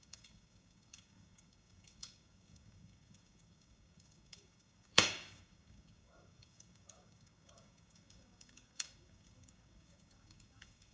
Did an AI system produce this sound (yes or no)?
yes